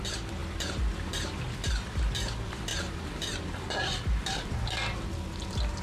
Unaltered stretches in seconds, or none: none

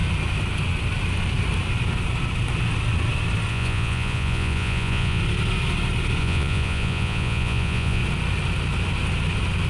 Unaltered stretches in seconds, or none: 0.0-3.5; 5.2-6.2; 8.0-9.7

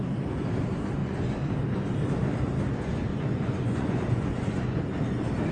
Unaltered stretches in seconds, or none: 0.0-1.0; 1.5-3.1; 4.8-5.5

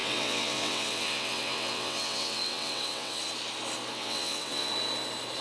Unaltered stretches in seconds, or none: 3.2-3.9; 4.7-5.4